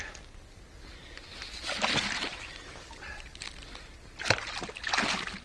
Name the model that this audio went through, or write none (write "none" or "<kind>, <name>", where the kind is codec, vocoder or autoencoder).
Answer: none